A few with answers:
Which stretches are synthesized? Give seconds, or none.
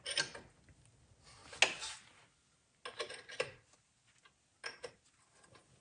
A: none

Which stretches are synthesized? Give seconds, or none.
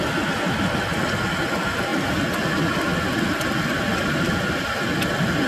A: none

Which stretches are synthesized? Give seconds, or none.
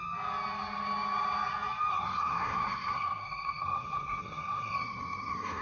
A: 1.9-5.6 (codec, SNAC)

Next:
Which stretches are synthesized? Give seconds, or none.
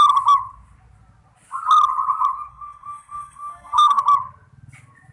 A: 2.5-4.0 (codec, SNAC)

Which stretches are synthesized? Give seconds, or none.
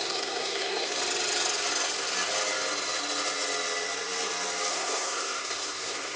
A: 0.0-1.0 (codec, SNAC); 4.7-6.2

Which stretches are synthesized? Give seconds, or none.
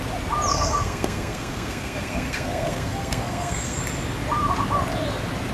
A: 0.5-3.8 (codec, SNAC)